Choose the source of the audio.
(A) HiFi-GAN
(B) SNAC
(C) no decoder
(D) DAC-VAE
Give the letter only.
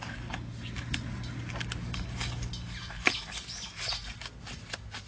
C